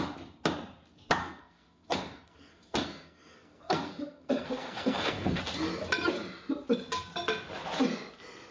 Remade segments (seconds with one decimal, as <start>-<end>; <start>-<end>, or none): 1.2-5.4